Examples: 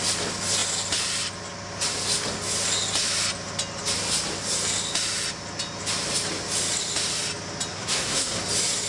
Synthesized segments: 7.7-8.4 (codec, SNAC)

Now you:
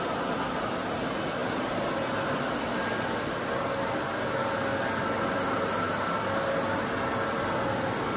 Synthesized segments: none

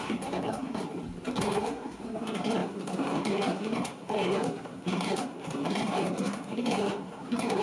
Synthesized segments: 0.0-0.8 (codec, SNAC); 1.3-7.6

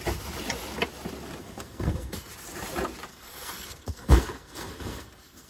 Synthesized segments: 1.4-2.3 (codec, SNAC); 3.1-5.5

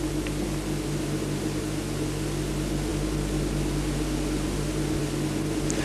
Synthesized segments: none

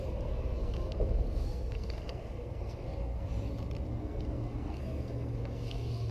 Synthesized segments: 0.0-3.3 (codec, SNAC); 3.9-6.1

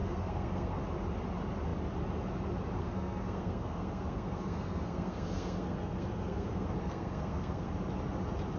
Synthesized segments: 0.0-0.8 (codec, SNAC); 2.8-7.7